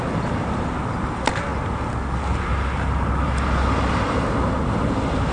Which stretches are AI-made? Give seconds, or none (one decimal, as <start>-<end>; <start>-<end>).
none